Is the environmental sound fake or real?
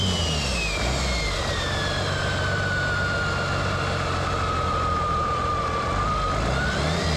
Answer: real